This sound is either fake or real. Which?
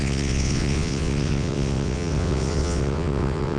fake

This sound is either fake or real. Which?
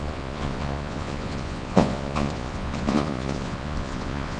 fake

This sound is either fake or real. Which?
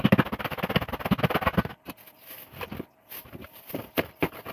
real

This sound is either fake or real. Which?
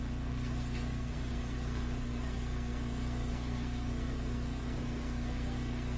fake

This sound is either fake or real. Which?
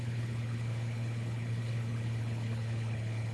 fake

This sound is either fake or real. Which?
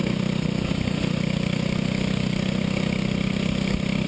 real